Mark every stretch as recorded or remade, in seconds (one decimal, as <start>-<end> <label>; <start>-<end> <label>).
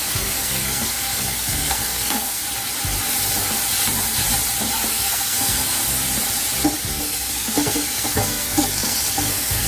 0.0-2.4 remade; 2.4-4.9 recorded; 4.9-5.8 remade; 5.8-6.9 recorded; 6.9-9.7 remade